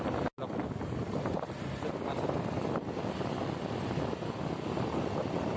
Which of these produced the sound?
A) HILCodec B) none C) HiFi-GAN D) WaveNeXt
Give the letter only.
B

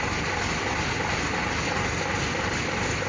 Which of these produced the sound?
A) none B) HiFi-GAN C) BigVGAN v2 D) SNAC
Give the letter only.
A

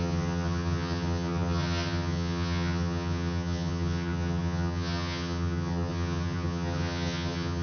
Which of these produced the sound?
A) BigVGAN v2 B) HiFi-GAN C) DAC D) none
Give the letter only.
B